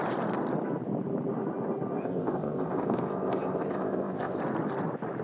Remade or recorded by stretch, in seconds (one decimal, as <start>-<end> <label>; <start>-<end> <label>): 0.0-2.0 recorded; 2.0-4.4 remade; 4.4-5.2 recorded